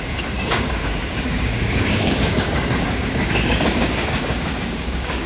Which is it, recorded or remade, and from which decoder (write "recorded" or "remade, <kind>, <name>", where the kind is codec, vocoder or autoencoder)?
remade, codec, DAC